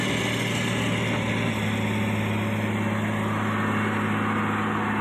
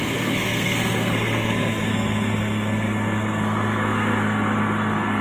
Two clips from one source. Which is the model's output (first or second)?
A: second